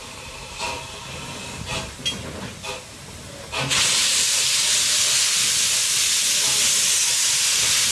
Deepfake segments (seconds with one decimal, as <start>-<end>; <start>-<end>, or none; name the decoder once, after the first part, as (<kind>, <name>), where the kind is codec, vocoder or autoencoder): none